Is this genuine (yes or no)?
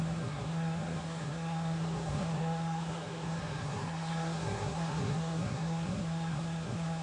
no